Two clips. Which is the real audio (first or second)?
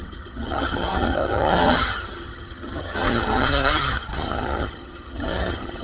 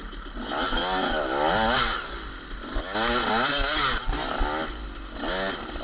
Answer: second